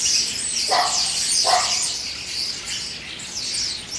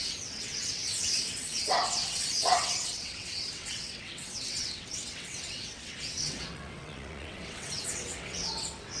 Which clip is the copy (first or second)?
second